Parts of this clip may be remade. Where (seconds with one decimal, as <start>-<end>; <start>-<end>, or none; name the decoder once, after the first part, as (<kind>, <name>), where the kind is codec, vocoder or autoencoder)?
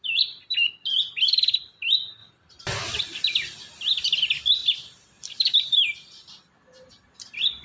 2.2-3.0 (vocoder, BigVGAN v2); 4.6-5.7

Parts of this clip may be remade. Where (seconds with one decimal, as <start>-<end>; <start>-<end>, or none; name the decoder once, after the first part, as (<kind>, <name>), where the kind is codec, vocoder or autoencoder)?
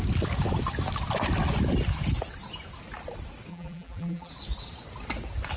3.5-4.3 (vocoder, BigVGAN v2)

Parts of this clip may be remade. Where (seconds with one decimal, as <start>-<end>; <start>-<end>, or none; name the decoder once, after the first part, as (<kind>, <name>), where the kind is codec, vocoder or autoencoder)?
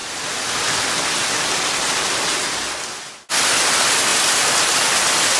none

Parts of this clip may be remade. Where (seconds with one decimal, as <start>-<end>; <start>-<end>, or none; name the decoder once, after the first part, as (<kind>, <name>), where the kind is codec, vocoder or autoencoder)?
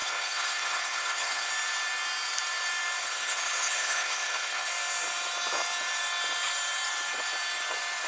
0.0-1.5 (codec, HILCodec); 3.0-4.7